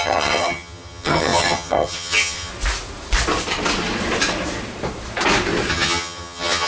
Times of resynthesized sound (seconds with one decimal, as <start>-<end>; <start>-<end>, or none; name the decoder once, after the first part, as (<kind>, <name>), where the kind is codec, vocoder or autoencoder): 0.0-2.5 (vocoder, HiFi-GAN); 5.7-6.7